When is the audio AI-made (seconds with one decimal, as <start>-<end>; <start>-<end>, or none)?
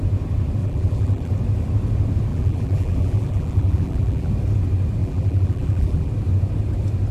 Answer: 0.6-1.3; 2.3-4.3; 5.0-6.1